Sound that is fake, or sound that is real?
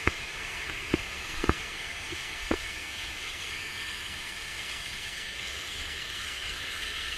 fake